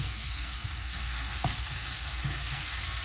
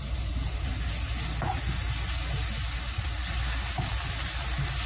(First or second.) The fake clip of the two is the first